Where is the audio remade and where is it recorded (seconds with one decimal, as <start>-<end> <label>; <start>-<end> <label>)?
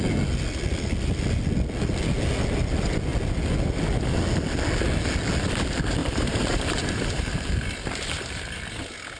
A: 0.0-6.0 recorded; 6.0-8.7 remade; 8.7-9.2 recorded